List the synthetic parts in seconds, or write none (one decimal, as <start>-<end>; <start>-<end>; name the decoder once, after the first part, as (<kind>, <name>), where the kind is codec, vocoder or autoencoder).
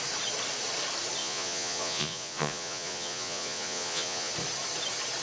1.2-4.3 (vocoder, Vocos)